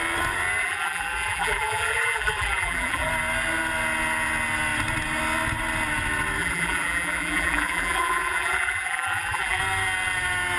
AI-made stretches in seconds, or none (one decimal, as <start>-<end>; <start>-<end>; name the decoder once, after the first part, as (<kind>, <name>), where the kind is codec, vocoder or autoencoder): 0.6-3.1 (vocoder, BigVGAN v2); 6.4-9.6